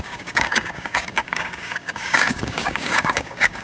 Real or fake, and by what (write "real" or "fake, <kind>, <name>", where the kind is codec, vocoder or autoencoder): fake, codec, DAC